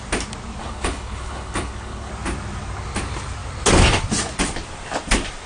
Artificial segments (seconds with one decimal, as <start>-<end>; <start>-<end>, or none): 0.6-2.1